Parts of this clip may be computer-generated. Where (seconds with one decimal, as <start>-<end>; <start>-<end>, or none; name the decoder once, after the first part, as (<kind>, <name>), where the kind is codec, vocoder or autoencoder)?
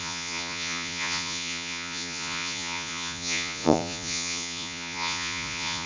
0.0-5.9 (vocoder, Vocos)